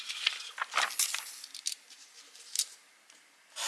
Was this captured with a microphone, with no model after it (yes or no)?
yes